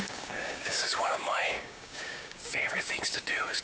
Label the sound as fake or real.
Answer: fake